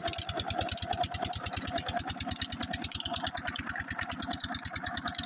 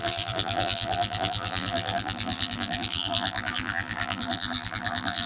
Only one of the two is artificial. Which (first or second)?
second